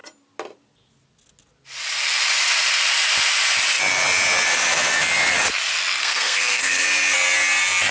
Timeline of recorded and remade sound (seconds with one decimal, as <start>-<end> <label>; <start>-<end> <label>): 0.0-6.0 recorded; 6.0-6.8 remade; 6.8-7.9 recorded